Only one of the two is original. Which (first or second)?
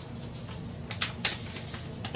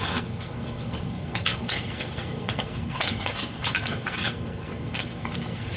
first